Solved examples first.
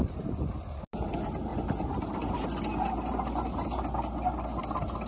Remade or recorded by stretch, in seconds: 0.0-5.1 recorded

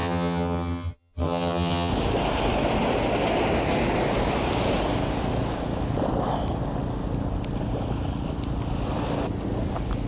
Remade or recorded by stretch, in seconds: 0.0-1.9 remade; 1.9-10.1 recorded

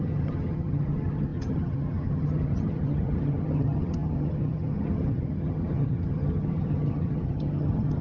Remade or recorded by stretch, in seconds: 0.0-8.0 remade

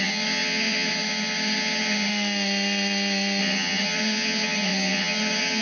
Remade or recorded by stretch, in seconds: 0.0-2.1 remade; 2.1-3.4 recorded; 3.4-5.6 remade

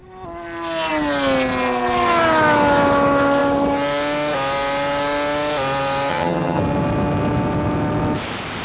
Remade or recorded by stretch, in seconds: 0.0-6.1 recorded; 6.1-6.6 remade; 6.6-8.6 recorded

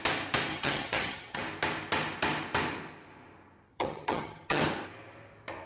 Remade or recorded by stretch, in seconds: 0.0-0.5 recorded; 0.5-1.4 remade; 1.4-3.7 recorded; 3.7-4.6 remade; 4.6-5.7 recorded